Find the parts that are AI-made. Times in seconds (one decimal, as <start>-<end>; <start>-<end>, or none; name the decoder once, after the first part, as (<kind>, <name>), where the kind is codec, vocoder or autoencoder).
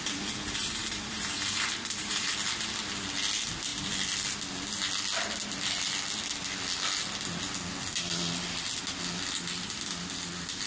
0.8-2.3 (vocoder, BigVGAN v2)